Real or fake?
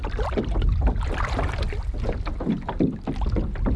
real